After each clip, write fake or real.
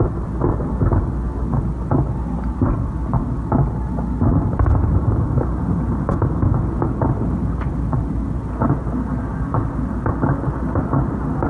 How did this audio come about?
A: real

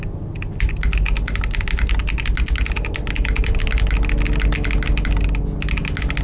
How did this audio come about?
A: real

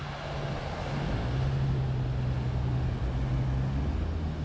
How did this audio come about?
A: real